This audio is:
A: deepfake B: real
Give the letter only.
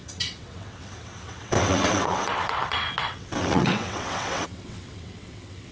A